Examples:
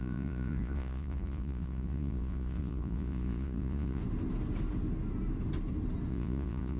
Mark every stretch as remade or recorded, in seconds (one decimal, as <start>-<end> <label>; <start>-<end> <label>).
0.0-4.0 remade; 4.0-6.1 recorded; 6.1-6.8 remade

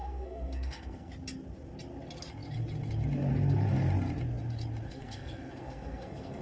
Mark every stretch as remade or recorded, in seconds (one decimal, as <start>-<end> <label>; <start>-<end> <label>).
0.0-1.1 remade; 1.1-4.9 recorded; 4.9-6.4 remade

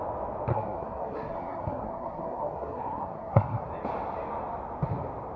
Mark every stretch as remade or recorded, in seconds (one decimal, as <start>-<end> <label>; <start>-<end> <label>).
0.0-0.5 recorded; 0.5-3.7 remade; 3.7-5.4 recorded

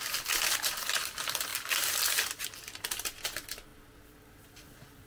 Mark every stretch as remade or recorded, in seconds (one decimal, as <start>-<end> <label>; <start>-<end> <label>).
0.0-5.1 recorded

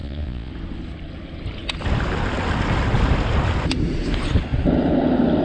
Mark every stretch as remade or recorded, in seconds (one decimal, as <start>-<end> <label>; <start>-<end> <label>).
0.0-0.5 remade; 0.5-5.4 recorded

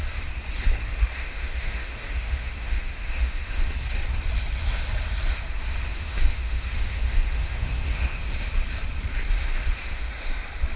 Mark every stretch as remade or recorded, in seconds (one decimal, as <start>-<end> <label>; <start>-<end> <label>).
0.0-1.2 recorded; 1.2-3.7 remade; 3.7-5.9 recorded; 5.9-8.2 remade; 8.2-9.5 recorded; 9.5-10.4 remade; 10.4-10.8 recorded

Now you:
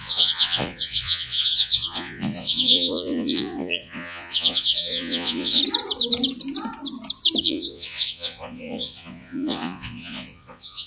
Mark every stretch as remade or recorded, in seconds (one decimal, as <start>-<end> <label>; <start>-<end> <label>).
0.0-5.6 remade; 5.6-7.4 recorded; 7.4-10.9 remade

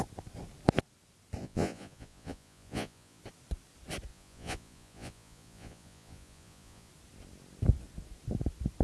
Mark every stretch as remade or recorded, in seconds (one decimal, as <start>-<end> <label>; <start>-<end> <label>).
0.0-1.4 recorded; 1.4-3.2 remade; 3.2-4.1 recorded; 4.1-6.9 remade; 6.9-8.8 recorded